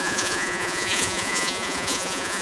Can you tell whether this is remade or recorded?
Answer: remade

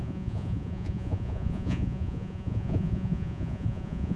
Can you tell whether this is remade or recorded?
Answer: remade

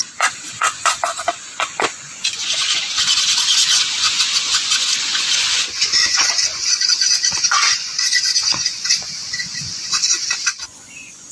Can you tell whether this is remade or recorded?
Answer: remade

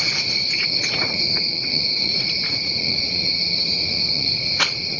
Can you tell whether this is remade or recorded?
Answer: remade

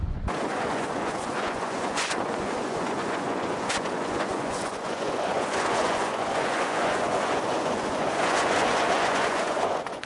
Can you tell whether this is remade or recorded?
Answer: remade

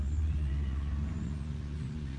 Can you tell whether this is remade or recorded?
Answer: remade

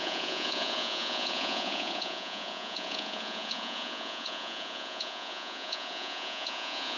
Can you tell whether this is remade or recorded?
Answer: remade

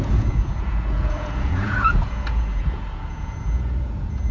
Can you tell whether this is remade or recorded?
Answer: remade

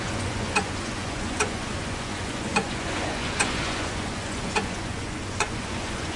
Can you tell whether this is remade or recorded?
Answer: remade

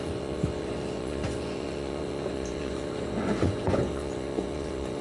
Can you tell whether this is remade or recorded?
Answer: remade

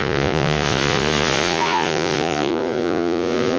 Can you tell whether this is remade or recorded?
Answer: remade